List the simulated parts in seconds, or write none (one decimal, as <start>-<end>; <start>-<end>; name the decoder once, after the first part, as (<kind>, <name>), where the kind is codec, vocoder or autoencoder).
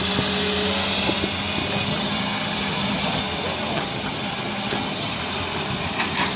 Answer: 1.9-3.2 (vocoder, HiFi-GAN); 3.7-5.2